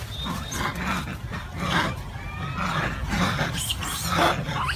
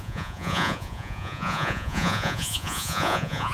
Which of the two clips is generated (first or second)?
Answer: second